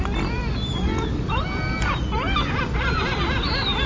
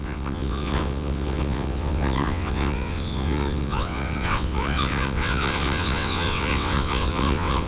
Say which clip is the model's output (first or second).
second